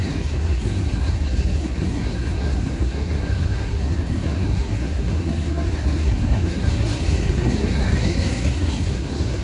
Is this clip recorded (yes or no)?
no